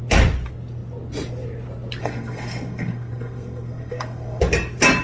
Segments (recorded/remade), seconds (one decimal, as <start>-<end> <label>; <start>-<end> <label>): 0.0-2.0 recorded; 2.0-4.4 remade; 4.4-5.0 recorded